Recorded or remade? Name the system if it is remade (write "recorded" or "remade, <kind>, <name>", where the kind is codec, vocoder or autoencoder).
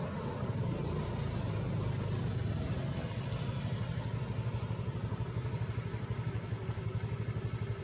recorded